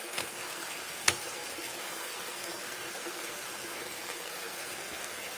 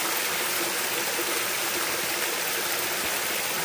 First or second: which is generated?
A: first